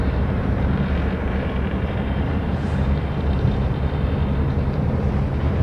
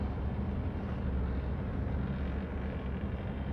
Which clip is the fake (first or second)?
first